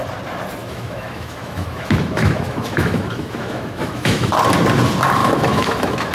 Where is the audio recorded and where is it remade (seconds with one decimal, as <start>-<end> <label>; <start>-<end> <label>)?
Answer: 0.0-0.6 recorded; 0.6-4.3 remade; 4.3-5.2 recorded; 5.2-6.1 remade